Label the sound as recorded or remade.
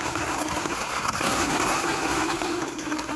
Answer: remade